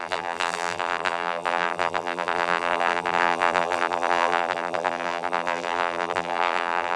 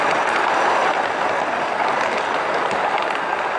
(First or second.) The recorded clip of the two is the second